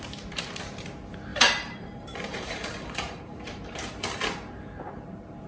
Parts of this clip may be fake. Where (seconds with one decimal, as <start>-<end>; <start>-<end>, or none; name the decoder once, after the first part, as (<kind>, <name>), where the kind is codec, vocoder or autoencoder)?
1.3-4.6 (vocoder, BigVGAN v2)